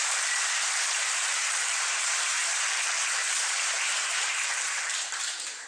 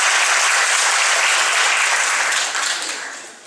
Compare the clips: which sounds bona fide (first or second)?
second